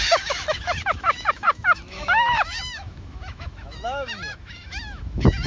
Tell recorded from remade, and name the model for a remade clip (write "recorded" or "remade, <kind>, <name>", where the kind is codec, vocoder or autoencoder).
remade, autoencoder, DAC-VAE